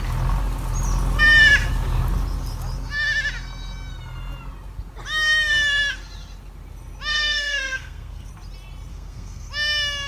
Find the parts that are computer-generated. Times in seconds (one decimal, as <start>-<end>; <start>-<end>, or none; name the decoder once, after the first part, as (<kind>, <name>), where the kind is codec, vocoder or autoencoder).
7.1-8.3 (codec, SNAC); 8.9-9.5